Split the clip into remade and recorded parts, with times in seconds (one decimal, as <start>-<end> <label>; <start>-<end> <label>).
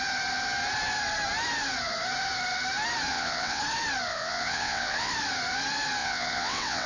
0.0-3.1 recorded; 3.1-3.6 remade; 3.6-4.1 recorded; 4.1-5.1 remade; 5.1-6.0 recorded; 6.0-6.9 remade